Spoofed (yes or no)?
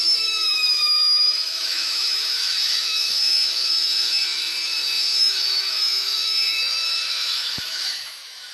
yes